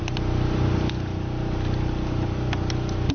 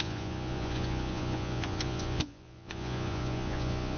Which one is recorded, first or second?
first